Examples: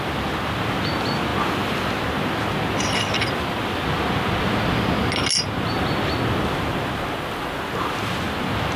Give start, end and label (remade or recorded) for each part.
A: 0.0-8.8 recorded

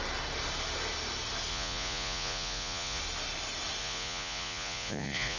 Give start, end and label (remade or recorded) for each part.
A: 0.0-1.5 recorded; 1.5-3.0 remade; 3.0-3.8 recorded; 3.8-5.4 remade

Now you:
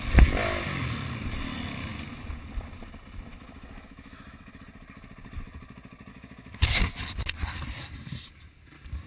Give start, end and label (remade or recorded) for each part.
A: 0.0-3.3 recorded; 3.3-4.6 remade; 4.6-6.1 recorded; 6.1-6.8 remade; 6.8-9.1 recorded

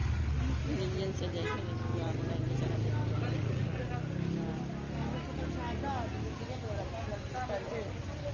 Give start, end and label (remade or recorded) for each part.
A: 0.0-3.4 recorded; 3.4-3.9 remade; 3.9-8.3 recorded

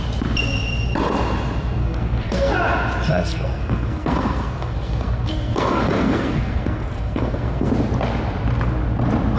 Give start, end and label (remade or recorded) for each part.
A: 0.0-1.8 recorded; 1.8-2.5 remade; 2.5-3.1 recorded; 3.1-7.7 remade; 7.7-9.4 recorded